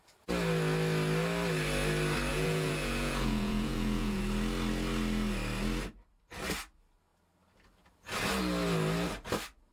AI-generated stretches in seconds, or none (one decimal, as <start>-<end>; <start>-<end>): 2.3-4.2